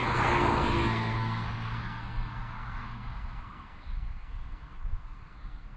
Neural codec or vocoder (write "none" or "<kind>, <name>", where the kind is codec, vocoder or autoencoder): codec, SNAC